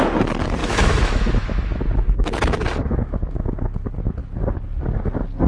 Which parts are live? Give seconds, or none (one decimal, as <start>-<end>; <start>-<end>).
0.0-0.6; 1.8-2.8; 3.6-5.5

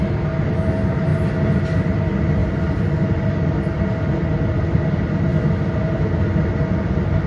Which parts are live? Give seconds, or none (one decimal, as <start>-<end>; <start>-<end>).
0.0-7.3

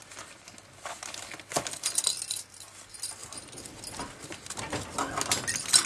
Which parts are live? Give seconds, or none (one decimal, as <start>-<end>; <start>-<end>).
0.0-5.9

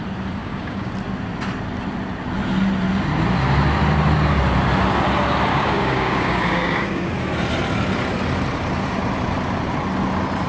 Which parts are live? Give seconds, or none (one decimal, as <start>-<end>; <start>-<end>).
0.0-0.4; 0.9-5.5; 7.1-10.5

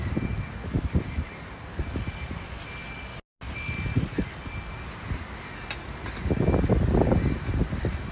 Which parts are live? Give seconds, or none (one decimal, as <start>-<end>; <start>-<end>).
0.0-8.1